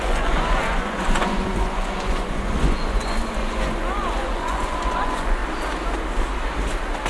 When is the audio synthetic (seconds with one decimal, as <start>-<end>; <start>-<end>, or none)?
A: 0.0-5.4